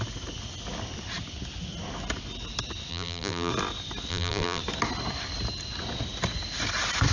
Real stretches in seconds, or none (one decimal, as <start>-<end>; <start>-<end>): 0.0-2.9; 3.5-4.1; 4.6-7.1